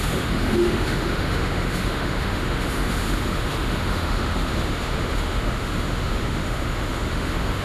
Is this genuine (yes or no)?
no